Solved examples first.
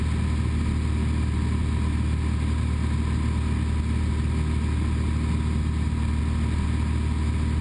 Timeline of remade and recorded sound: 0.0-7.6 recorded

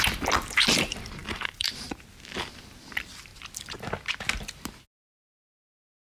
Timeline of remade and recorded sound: 0.0-1.2 recorded; 1.2-1.9 remade; 1.9-6.0 recorded

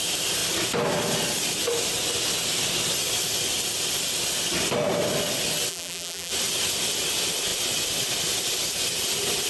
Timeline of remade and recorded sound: 0.0-5.7 recorded; 5.7-6.3 remade; 6.3-9.5 recorded

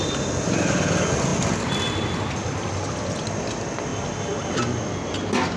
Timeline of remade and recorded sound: 0.0-5.6 recorded

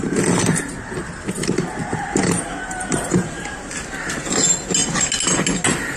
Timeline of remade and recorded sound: 0.0-1.8 recorded; 1.8-3.7 remade; 3.7-6.0 recorded

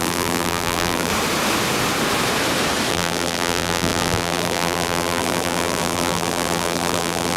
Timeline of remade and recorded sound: 0.0-1.1 remade; 1.1-2.9 recorded; 2.9-7.4 remade